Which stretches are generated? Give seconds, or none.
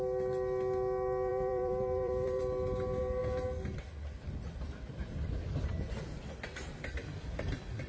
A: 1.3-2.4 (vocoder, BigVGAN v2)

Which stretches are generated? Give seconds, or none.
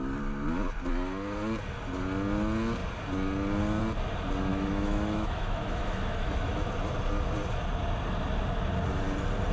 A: 4.5-6.7 (autoencoder, DAC-VAE)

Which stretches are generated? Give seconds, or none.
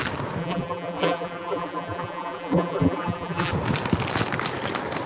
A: 0.4-3.5 (vocoder, BigVGAN v2)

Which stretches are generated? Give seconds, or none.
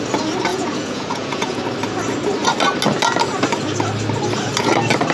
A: 0.5-1.6 (vocoder, Vocos)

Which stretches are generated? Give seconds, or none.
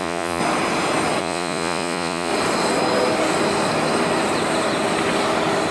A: 0.0-0.4 (vocoder, Vocos); 1.2-2.3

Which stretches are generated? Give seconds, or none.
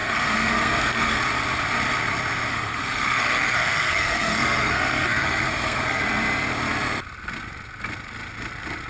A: 0.0-1.2 (codec, SNAC); 2.5-6.0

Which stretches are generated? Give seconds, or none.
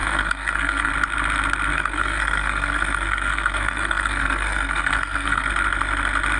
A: 0.0-0.9 (codec, SNAC); 1.7-5.5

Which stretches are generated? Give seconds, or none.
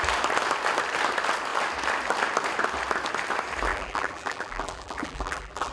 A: 3.7-5.7 (vocoder, BigVGAN v2)